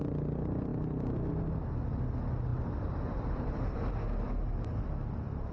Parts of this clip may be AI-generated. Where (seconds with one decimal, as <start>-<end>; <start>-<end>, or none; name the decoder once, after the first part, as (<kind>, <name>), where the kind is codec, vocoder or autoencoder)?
2.5-3.9 (vocoder, BigVGAN v2)